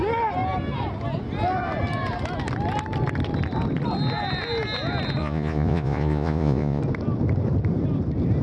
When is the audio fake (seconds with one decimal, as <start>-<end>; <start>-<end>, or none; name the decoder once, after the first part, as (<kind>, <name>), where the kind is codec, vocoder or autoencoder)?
5.2-6.8 (vocoder, Vocos)